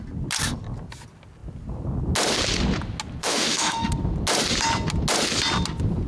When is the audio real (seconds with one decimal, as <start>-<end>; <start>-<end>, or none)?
0.0-3.2; 3.9-6.1